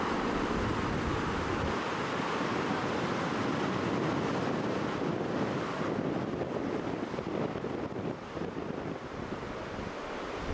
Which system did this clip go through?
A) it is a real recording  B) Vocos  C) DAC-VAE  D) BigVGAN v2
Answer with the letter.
A